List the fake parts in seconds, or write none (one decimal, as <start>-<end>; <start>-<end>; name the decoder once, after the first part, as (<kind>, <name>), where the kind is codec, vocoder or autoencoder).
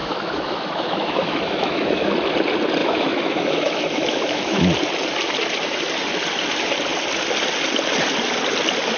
0.0-2.1 (autoencoder, DAC-VAE); 2.8-4.6